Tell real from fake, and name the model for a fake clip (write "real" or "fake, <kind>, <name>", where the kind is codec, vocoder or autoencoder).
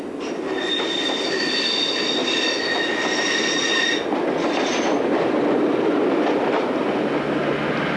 real